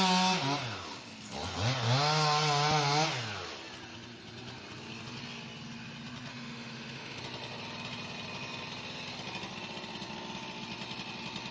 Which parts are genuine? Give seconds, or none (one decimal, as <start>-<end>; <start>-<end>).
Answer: 0.0-6.3; 7.2-11.5